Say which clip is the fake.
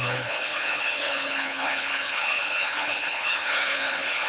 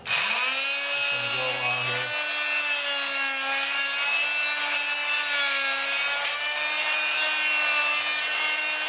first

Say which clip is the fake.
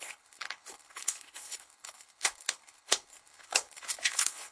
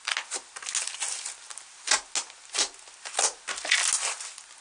first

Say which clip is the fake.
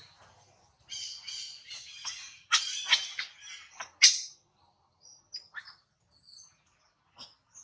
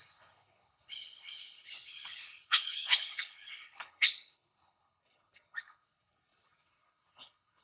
second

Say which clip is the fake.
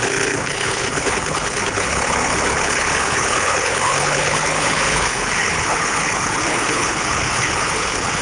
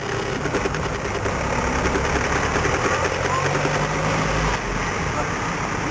first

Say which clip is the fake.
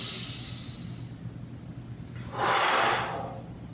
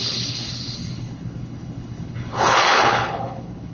second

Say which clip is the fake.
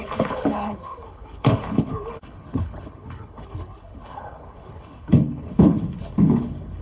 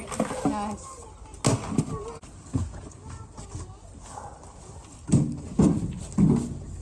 first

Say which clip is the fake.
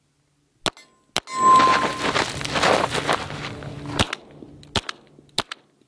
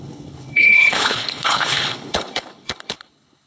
second